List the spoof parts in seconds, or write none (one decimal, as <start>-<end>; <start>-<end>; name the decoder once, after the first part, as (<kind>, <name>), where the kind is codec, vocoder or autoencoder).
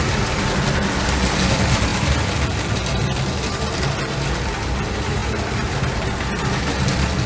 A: none